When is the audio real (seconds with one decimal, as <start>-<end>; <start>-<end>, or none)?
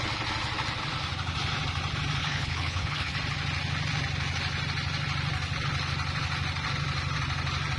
0.0-2.2; 3.1-7.8